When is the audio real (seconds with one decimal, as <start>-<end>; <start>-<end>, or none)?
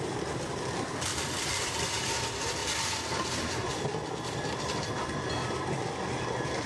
0.0-1.1; 2.1-5.4; 6.2-6.7